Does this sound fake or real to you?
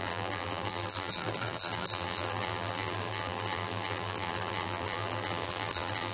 fake